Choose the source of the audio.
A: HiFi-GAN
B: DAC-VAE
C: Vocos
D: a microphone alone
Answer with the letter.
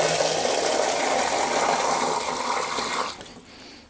D